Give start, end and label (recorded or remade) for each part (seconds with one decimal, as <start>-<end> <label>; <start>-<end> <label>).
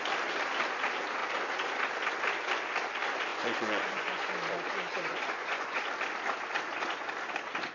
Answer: 0.0-3.3 recorded; 3.3-4.3 remade; 4.3-4.9 recorded; 4.9-5.8 remade; 5.8-7.7 recorded